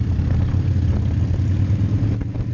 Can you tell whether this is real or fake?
real